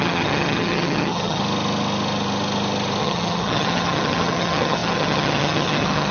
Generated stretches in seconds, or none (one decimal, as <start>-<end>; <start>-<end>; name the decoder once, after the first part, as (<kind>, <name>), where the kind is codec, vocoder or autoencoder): 0.0-1.4 (vocoder, HiFi-GAN); 3.0-6.1